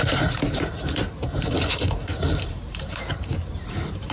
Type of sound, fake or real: fake